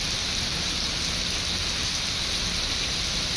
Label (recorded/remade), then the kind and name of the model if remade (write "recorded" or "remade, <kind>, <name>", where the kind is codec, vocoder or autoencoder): recorded